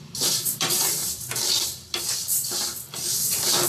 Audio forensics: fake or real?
fake